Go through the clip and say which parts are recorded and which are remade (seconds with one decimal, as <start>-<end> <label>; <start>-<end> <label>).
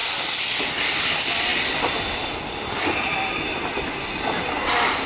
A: 0.0-5.1 recorded